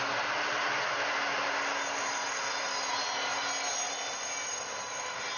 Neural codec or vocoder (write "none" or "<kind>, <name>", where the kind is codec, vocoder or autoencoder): none